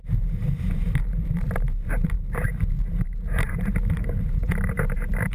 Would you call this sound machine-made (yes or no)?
yes